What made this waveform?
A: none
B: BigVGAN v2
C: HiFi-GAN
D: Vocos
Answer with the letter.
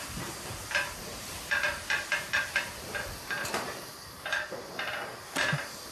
B